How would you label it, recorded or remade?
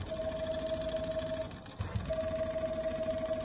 recorded